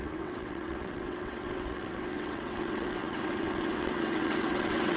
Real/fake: fake